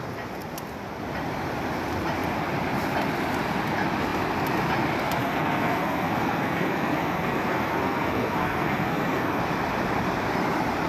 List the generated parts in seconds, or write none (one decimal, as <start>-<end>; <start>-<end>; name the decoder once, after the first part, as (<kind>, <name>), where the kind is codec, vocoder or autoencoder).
5.2-9.4 (codec, SNAC)